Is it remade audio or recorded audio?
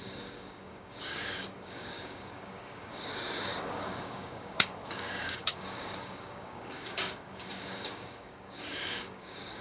remade